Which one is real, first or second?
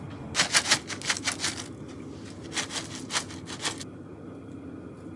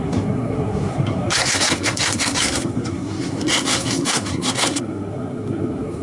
first